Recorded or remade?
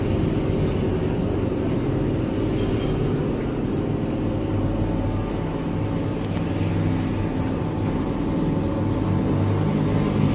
recorded